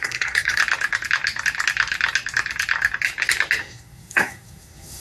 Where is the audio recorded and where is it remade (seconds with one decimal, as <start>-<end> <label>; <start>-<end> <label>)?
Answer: 0.0-0.6 remade; 0.6-3.6 recorded; 3.6-5.0 remade